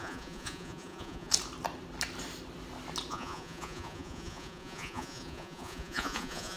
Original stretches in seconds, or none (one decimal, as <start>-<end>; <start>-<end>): 1.3-3.1